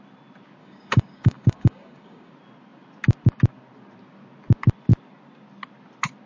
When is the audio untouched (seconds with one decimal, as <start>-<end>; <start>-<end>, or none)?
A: 0.0-0.6; 2.3-6.3